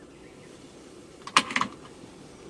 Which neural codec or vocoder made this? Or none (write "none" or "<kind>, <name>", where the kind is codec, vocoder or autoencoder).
none